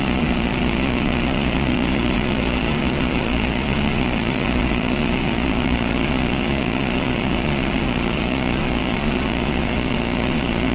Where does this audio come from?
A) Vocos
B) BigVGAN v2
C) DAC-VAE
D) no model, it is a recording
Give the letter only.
A